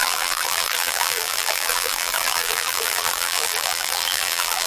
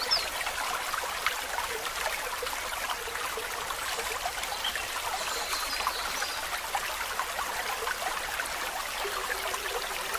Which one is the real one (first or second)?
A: second